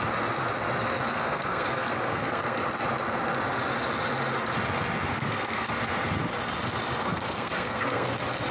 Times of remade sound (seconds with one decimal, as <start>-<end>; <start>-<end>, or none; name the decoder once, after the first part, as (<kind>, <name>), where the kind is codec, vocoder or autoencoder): 1.1-2.6 (codec, SNAC); 5.1-5.7; 7.0-8.1